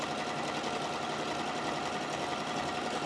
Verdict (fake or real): real